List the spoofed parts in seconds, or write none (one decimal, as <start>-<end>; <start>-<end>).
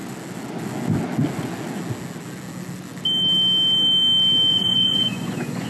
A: 4.5-5.7